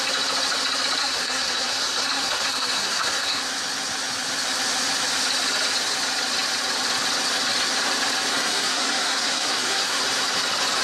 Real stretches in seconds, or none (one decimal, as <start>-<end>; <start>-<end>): 0.0-1.0; 3.4-8.3; 10.0-10.8